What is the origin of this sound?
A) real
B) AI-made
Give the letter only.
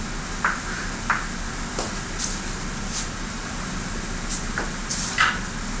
B